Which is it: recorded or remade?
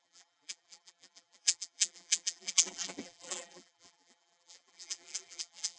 remade